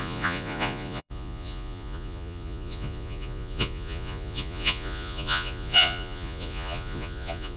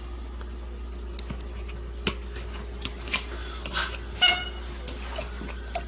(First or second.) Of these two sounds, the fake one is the first